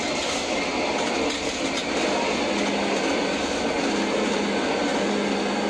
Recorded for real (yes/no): yes